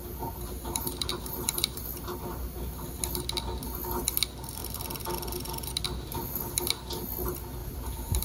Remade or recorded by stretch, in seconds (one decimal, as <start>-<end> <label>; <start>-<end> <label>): 0.0-1.8 remade; 1.8-7.6 recorded; 7.6-8.2 remade